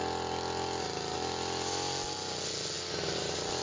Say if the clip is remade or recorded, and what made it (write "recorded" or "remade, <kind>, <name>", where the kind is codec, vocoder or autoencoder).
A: recorded